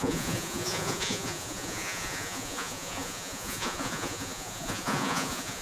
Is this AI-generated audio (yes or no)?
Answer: yes